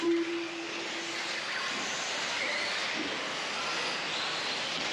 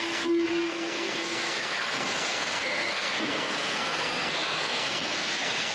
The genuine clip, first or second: first